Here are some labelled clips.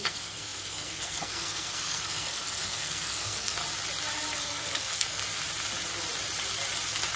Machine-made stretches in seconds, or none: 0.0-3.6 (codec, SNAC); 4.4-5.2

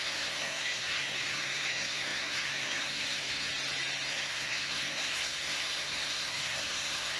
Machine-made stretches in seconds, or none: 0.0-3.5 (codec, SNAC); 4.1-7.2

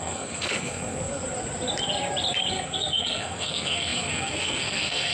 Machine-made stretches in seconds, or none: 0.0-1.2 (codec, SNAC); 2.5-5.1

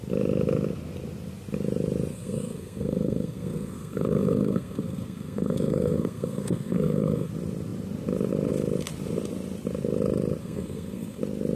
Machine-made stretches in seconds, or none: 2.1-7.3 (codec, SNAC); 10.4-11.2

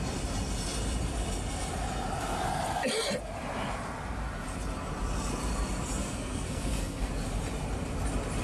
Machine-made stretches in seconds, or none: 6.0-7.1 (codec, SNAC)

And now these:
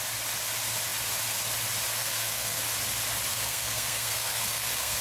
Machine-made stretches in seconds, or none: 2.0-2.6 (codec, SNAC); 3.3-5.0

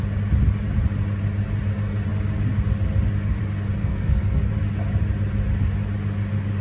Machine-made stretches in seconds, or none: 3.8-4.5 (codec, SNAC)